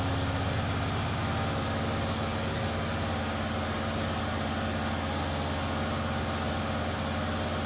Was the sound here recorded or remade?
recorded